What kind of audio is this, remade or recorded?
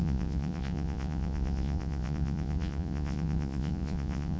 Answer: remade